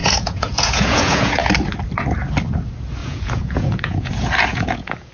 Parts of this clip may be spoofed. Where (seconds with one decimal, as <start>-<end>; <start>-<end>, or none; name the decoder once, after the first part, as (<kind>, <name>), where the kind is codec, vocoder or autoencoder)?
0.0-1.5 (vocoder, Vocos); 3.0-4.1; 4.5-5.1